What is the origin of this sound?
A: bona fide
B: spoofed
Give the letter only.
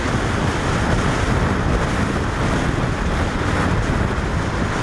B